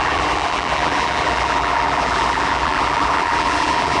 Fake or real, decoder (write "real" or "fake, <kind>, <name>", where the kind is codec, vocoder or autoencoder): fake, vocoder, BigVGAN v2